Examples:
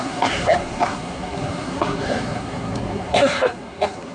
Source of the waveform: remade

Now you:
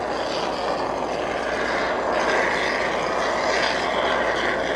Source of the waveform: recorded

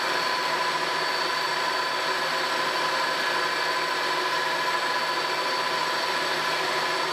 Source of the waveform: recorded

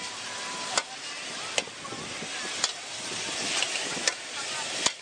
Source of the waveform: recorded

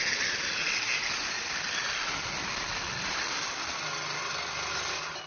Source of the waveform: recorded